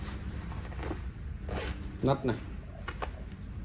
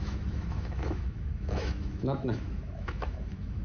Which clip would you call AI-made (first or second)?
second